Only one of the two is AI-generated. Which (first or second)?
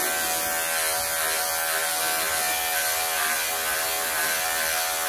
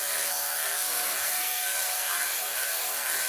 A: second